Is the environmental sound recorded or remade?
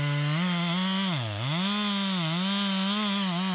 recorded